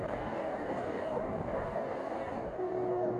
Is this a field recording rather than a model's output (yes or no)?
no